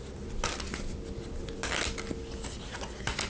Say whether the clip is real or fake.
real